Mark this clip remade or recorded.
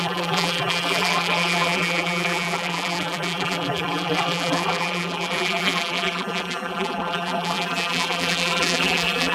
remade